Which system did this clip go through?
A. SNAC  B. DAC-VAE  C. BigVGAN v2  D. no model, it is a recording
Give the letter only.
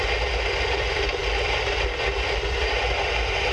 D